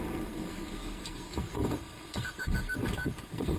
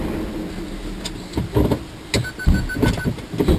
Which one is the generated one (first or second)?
first